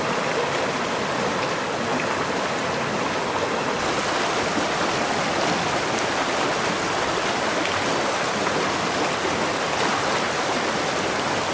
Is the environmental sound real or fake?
real